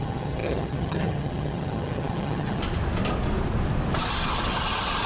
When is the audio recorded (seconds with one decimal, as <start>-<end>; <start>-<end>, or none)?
2.6-5.1

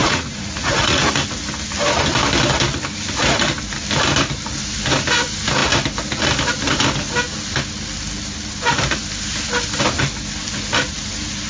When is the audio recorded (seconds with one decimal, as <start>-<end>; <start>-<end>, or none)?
1.1-11.5

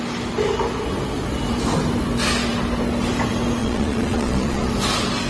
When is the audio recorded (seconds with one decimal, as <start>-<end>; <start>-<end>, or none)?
0.0-3.6; 4.7-5.3

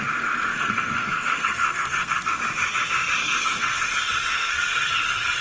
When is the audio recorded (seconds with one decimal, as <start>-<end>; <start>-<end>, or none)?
0.0-0.5; 2.3-3.2; 3.8-4.3; 4.9-5.4

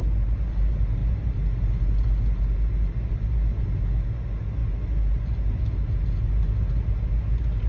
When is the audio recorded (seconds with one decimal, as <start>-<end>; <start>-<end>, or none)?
0.0-7.7